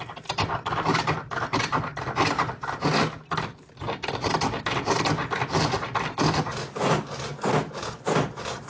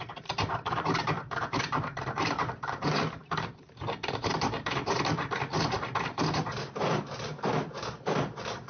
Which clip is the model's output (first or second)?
second